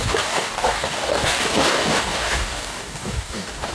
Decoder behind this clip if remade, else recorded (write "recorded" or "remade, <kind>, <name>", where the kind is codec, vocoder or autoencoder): remade, codec, DAC